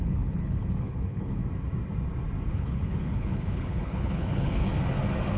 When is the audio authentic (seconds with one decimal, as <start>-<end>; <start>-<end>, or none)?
1.4-2.5; 4.7-5.4